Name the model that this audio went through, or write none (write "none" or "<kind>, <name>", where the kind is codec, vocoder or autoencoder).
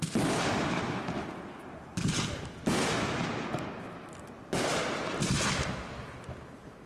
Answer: none